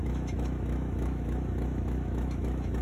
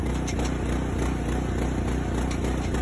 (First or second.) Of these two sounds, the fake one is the first